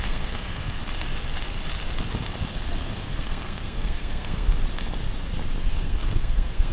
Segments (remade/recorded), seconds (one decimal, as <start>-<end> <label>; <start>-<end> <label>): 0.0-0.8 remade; 0.8-2.5 recorded; 2.5-4.6 remade; 4.6-5.7 recorded; 5.7-6.7 remade